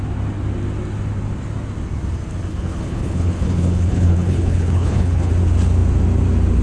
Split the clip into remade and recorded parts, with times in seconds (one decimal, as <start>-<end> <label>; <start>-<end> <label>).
0.0-2.5 recorded; 2.5-5.3 remade; 5.3-6.6 recorded